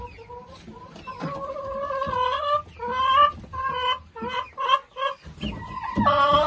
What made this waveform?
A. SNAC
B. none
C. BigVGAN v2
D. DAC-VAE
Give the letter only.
B